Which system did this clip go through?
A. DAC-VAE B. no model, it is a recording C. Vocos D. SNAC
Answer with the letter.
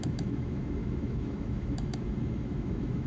A